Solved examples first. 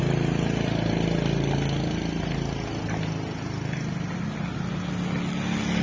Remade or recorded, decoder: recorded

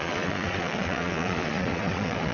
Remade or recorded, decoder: remade, vocoder, Vocos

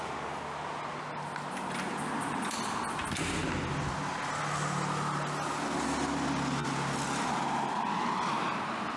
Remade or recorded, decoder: recorded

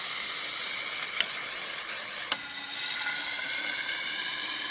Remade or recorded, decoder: recorded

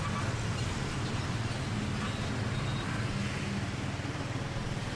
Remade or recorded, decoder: recorded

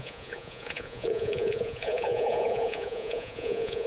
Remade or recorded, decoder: remade, vocoder, Vocos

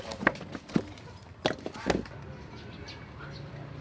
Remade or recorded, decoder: recorded